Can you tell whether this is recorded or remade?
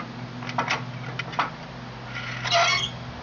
recorded